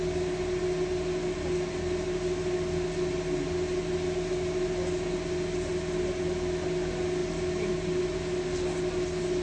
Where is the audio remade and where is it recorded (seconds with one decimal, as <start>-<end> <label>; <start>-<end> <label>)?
0.0-9.4 recorded